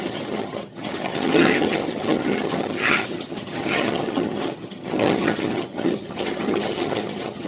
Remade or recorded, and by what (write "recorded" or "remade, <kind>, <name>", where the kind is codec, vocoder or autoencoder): remade, vocoder, HiFi-GAN